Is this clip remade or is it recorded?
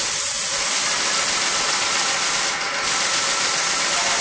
recorded